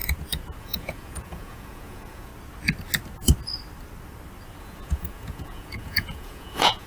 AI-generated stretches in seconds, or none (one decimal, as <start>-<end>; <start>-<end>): 0.6-2.3; 4.6-6.9